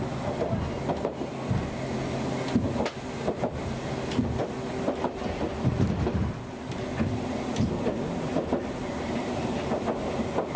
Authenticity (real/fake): real